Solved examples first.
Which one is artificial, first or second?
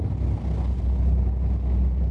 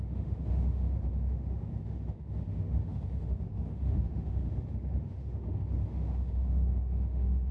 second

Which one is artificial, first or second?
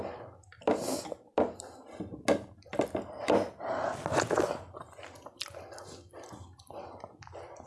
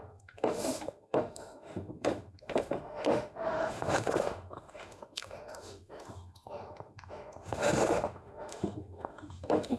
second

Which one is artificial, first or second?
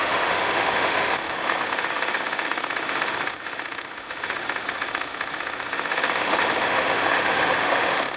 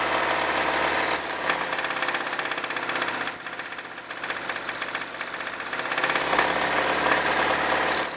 first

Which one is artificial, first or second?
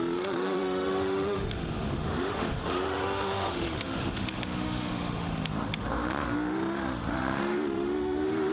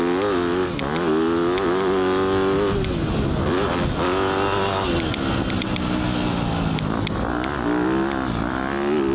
first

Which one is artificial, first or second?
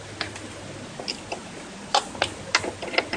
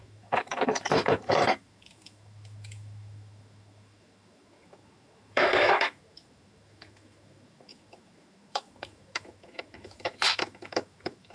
second